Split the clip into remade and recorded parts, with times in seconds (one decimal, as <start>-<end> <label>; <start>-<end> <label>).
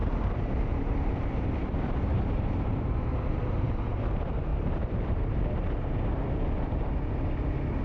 0.0-3.9 remade; 3.9-4.5 recorded; 4.5-5.4 remade; 5.4-7.8 recorded